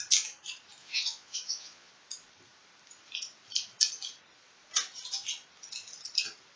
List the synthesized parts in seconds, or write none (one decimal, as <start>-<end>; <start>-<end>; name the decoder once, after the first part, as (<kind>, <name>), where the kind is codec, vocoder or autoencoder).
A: 0.8-1.9 (vocoder, Vocos)